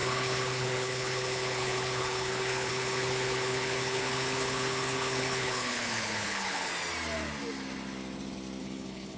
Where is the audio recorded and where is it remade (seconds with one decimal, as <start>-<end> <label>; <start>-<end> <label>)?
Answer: 0.0-6.7 remade; 6.7-8.6 recorded; 8.6-9.2 remade